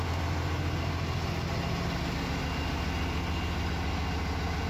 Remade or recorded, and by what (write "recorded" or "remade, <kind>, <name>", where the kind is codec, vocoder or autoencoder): recorded